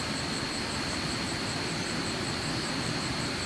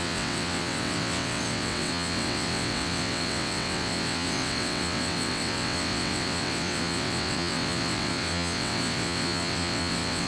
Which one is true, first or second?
first